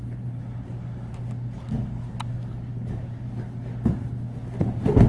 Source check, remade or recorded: recorded